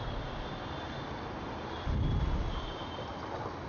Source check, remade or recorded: recorded